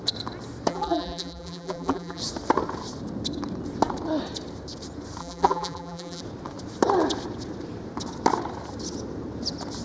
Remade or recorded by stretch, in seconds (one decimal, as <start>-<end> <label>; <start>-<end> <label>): 0.0-0.7 recorded; 0.7-2.2 remade; 2.2-5.2 recorded; 5.2-6.2 remade; 6.2-9.8 recorded